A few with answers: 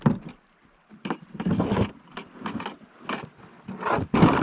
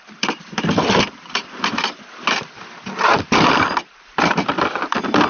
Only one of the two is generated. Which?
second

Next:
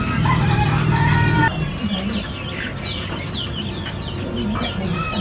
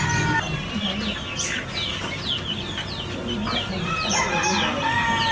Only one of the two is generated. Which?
first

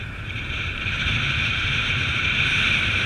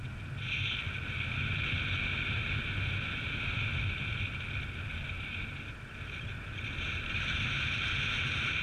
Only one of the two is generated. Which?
first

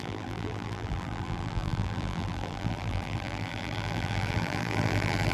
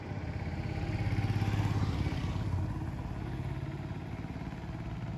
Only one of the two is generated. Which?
first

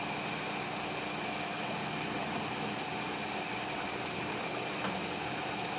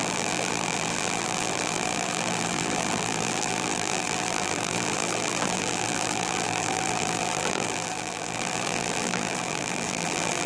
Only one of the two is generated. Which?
second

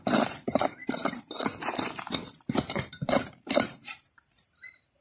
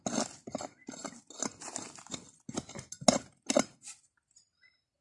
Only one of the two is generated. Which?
first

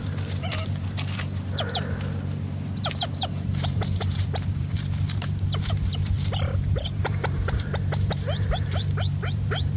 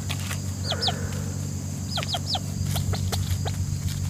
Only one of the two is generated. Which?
first